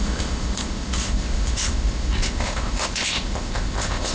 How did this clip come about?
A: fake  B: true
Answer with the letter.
A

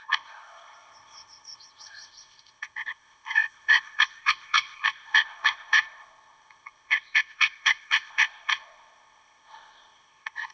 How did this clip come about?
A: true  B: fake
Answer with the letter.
B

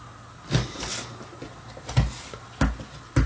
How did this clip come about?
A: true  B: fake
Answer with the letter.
A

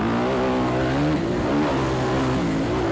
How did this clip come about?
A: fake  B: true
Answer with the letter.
B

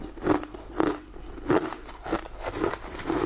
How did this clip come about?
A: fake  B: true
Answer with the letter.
B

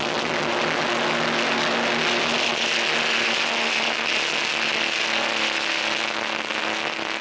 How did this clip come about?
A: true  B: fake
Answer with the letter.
A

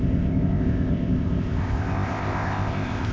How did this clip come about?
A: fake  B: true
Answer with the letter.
A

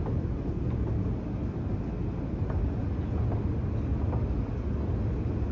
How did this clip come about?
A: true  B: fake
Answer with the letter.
A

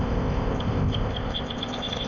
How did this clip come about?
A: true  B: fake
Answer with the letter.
B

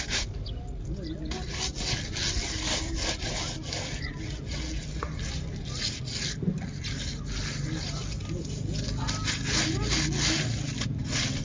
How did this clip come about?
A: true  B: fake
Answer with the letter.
A